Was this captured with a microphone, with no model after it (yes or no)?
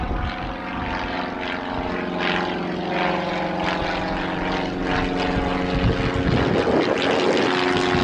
yes